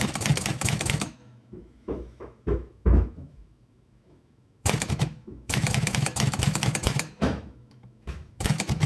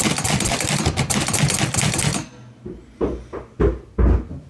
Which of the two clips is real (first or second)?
second